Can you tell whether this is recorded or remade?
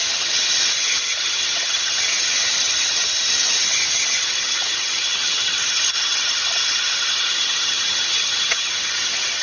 remade